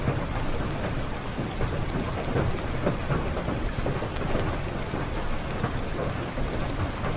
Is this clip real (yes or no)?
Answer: yes